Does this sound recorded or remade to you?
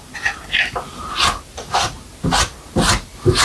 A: recorded